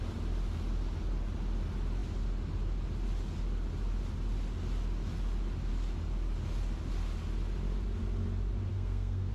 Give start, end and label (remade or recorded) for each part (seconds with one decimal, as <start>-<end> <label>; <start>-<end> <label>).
0.0-8.7 recorded; 8.7-9.3 remade